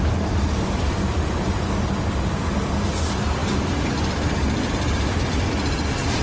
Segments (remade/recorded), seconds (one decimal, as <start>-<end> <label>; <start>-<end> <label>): 0.0-6.2 recorded